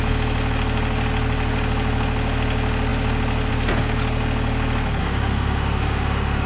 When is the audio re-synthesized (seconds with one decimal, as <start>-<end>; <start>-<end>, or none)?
5.0-6.5